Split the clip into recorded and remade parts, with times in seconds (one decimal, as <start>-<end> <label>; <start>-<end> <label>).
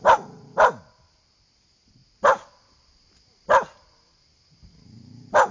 0.0-5.5 recorded